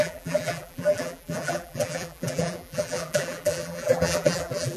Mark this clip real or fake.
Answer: fake